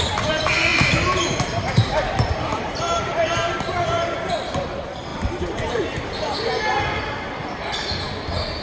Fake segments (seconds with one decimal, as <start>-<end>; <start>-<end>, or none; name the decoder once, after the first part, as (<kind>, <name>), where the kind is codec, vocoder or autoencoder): 0.7-4.3 (vocoder, BigVGAN v2); 5.1-6.5